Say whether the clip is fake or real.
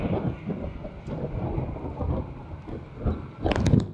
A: real